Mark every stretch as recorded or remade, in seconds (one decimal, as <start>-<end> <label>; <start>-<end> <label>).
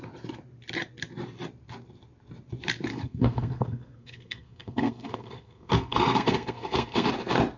0.0-2.9 recorded; 2.9-7.1 remade; 7.1-7.6 recorded